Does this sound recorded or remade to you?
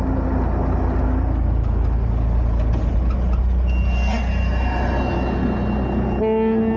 recorded